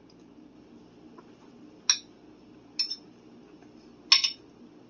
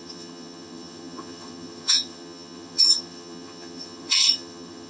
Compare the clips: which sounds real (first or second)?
first